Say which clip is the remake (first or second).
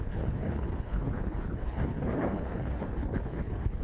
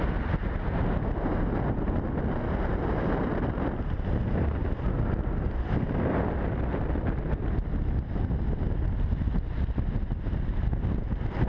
first